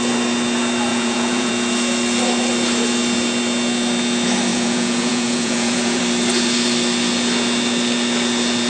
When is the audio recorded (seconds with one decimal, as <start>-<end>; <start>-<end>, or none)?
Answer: 0.0-0.9; 1.5-4.5; 6.0-8.7